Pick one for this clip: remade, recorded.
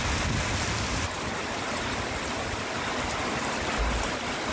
recorded